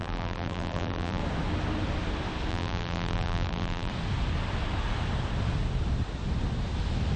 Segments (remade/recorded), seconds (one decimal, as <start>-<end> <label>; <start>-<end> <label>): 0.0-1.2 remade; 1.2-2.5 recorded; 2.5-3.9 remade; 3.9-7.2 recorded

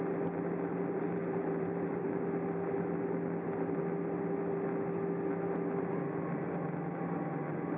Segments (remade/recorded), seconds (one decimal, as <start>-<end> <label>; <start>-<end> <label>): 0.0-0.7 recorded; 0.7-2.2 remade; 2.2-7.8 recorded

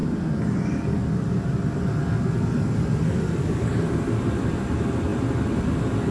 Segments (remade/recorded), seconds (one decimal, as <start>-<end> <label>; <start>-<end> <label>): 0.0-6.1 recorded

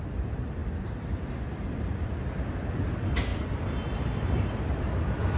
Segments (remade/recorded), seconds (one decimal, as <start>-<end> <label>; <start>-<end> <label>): 0.0-3.3 recorded; 3.3-4.3 remade; 4.3-5.4 recorded